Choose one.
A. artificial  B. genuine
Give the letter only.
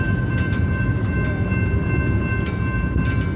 B